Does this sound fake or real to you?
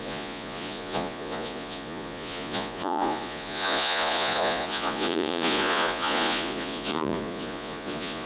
fake